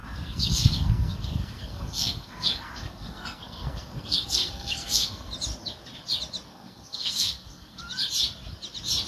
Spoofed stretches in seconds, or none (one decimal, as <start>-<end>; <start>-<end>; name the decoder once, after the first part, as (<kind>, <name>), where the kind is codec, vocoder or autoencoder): 0.0-5.3 (codec, SNAC); 6.5-7.8